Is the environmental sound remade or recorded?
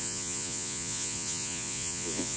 remade